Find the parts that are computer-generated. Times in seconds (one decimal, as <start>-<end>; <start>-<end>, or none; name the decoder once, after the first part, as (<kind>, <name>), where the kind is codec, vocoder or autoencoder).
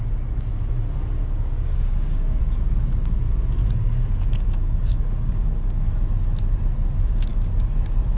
1.2-2.4 (codec, DAC); 3.6-5.9